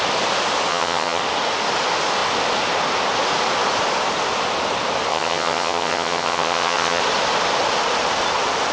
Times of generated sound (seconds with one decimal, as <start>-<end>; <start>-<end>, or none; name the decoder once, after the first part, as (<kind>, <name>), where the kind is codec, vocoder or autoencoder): 0.7-1.2 (vocoder, HiFi-GAN); 5.1-7.0